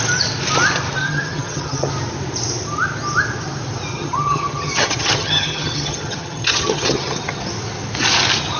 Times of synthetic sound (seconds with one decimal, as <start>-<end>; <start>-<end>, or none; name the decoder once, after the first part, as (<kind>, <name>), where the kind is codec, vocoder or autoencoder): 1.0-1.9 (vocoder, HiFi-GAN); 3.9-7.4